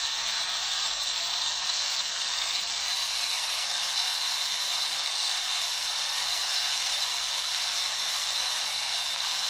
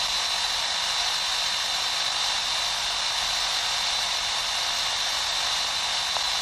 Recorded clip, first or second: second